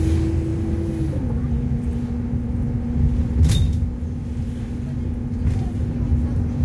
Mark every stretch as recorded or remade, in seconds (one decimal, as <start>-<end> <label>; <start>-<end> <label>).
0.0-6.6 recorded

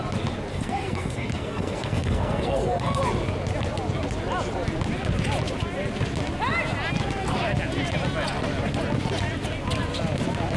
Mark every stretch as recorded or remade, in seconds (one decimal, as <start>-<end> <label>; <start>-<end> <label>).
0.0-0.5 recorded; 0.5-3.0 remade; 3.0-10.6 recorded

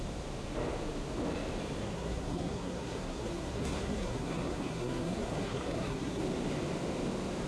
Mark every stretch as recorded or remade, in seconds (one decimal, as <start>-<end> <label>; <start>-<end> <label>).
0.0-1.8 recorded; 1.8-6.2 remade; 6.2-7.5 recorded